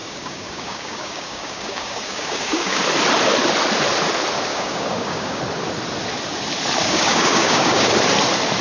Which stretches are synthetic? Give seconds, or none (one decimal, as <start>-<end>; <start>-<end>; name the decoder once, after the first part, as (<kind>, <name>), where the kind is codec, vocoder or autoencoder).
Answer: 0.0-2.8 (codec, DAC); 4.5-5.4; 6.8-7.9